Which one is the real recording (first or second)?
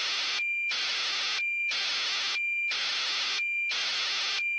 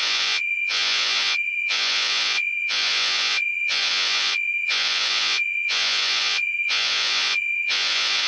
first